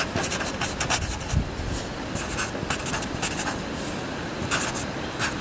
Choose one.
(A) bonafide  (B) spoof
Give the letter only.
A